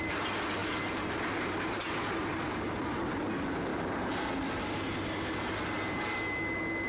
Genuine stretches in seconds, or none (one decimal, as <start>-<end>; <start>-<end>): 0.0-0.6; 2.9-3.7; 4.3-6.9